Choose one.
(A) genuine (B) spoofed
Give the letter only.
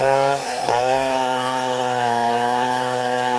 B